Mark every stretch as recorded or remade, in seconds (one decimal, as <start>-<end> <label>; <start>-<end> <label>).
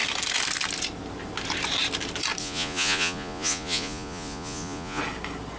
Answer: 0.0-2.4 recorded; 2.4-5.0 remade; 5.0-5.6 recorded